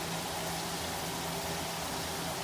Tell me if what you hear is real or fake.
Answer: real